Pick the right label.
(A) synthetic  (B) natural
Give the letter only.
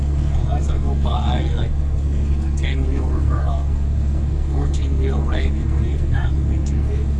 A